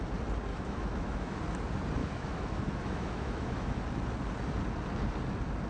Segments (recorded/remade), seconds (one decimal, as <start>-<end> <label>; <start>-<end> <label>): 0.0-0.5 recorded; 0.5-1.4 remade; 1.4-2.0 recorded; 2.0-3.8 remade; 3.8-5.7 recorded